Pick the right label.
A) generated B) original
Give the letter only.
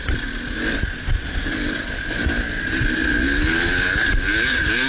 B